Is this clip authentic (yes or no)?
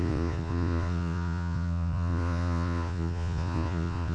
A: no